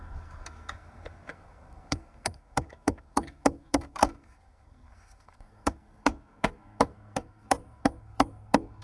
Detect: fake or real fake